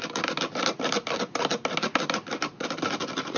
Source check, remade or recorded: recorded